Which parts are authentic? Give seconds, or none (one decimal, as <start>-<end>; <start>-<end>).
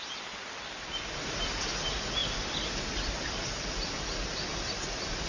0.0-2.2